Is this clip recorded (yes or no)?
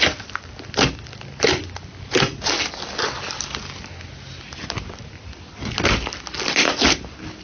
yes